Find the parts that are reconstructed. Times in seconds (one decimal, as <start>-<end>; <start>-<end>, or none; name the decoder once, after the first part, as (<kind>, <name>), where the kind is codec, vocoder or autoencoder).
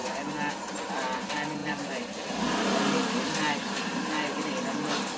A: 1.6-2.4 (vocoder, BigVGAN v2)